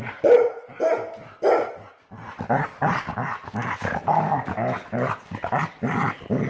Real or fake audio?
real